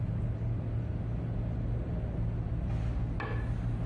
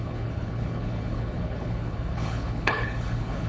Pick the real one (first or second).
first